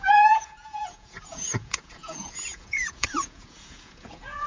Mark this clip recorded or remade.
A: remade